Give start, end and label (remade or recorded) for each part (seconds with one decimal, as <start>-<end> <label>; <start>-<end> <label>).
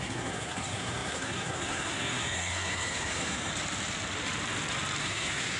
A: 0.0-3.5 remade; 3.5-5.0 recorded; 5.0-5.6 remade